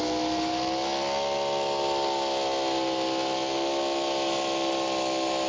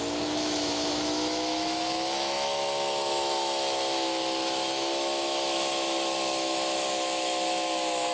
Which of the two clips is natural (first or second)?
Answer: first